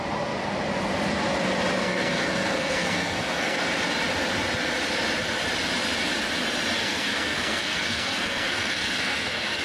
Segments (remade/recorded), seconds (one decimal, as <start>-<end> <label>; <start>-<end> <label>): 0.0-1.8 recorded; 1.8-3.6 remade; 3.6-6.8 recorded; 6.8-9.6 remade